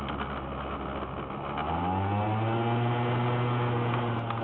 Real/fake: real